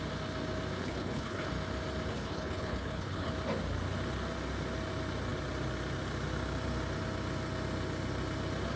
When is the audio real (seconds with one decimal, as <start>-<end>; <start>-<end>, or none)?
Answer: 0.0-0.8; 1.5-2.1; 3.3-8.8